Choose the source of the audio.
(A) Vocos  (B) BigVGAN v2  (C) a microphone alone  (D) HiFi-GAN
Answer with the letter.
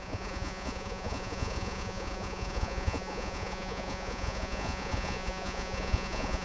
A